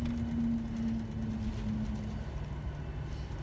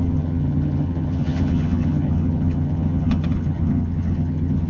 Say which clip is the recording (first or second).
first